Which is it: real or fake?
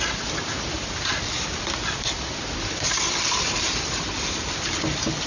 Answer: fake